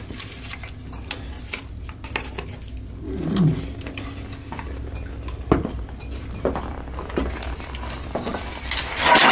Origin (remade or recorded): recorded